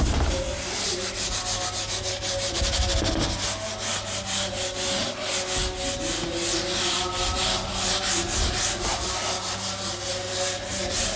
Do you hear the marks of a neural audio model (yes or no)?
no